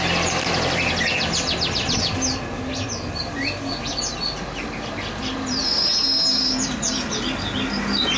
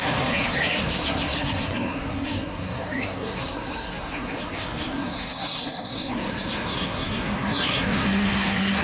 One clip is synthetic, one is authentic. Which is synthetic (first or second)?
second